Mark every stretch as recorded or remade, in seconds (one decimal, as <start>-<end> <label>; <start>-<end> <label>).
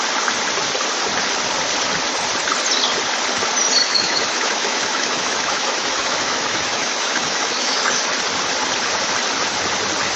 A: 0.0-3.8 recorded; 3.8-7.9 remade; 7.9-10.2 recorded